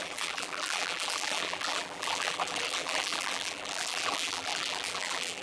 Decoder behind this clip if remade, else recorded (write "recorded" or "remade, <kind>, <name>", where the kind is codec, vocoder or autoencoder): remade, vocoder, BigVGAN v2